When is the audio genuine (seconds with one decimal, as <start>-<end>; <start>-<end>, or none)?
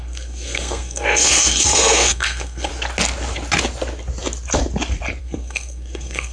2.7-5.2